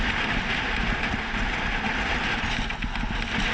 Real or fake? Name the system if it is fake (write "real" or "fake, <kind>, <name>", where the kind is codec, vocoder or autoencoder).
real